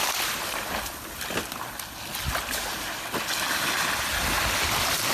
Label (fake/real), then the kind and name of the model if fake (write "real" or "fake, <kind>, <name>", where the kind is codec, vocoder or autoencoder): real